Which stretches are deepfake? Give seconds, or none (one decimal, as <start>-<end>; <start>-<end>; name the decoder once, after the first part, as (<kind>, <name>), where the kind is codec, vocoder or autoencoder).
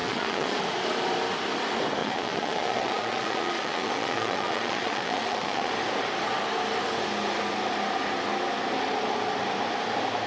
0.0-0.6 (vocoder, Vocos); 2.0-5.7